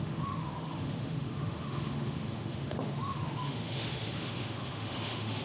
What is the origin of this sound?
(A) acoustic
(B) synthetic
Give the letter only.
B